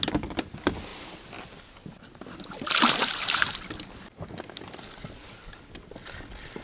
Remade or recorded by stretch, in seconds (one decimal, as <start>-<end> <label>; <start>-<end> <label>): 0.0-6.6 recorded